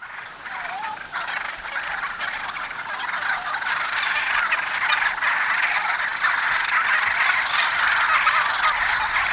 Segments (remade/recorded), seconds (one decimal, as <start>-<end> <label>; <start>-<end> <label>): 0.0-9.3 recorded